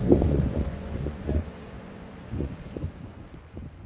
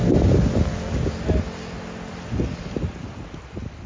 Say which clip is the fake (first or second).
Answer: first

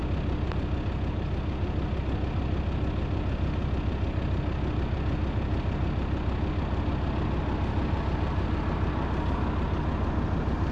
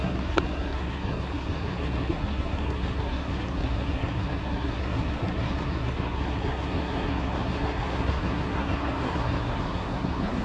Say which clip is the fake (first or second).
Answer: second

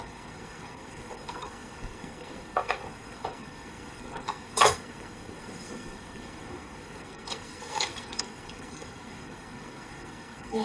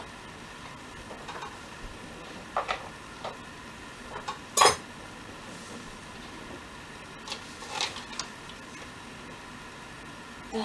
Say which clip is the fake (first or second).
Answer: first